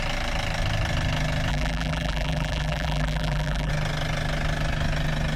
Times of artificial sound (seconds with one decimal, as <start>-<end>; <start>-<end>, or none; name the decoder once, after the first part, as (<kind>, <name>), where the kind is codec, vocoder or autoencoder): 1.5-3.7 (vocoder, BigVGAN v2)